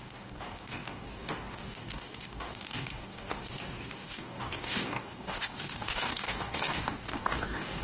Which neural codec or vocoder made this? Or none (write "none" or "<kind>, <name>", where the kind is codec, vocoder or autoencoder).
codec, DAC